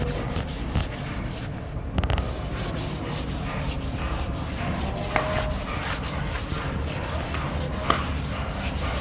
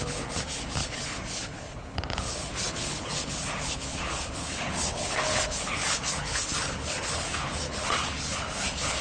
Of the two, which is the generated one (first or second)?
second